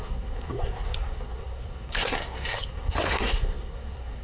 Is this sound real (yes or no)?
no